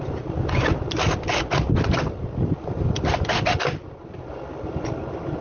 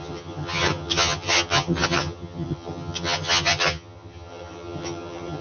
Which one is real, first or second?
first